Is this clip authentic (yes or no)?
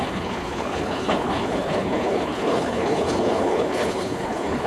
no